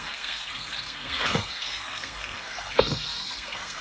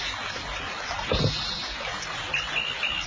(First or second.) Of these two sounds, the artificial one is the first